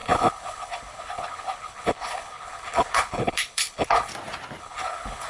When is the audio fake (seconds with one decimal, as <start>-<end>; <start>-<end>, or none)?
0.0-4.1; 4.6-5.3